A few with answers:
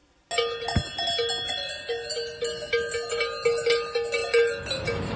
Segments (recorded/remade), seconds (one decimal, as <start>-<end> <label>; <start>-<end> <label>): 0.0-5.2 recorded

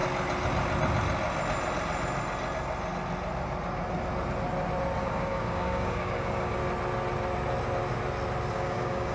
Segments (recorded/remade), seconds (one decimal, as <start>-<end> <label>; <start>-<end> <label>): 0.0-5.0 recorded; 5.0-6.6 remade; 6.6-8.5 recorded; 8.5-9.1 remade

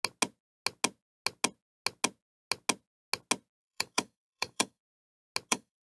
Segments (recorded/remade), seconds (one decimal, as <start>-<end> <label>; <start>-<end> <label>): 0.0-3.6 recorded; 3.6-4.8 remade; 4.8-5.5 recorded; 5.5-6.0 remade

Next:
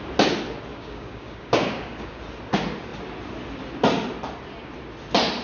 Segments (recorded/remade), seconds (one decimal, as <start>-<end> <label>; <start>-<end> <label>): 0.0-0.7 recorded; 0.7-2.2 remade; 2.2-5.4 recorded

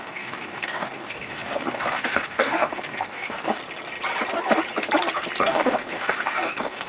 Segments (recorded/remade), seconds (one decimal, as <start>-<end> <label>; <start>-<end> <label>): 0.0-3.6 remade; 3.6-5.4 recorded; 5.4-6.9 remade

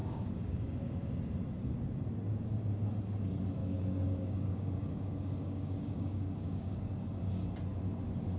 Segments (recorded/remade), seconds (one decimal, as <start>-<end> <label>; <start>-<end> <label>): 0.0-1.0 remade; 1.0-3.6 recorded; 3.6-7.2 remade; 7.2-8.4 recorded